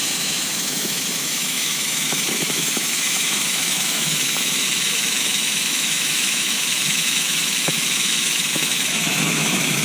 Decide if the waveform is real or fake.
fake